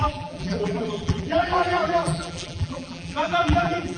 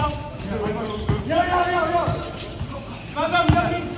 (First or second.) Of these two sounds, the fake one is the first